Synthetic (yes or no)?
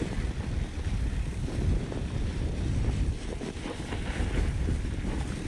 no